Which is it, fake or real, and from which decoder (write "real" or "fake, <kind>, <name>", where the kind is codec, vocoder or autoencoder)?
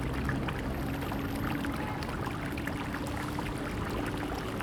real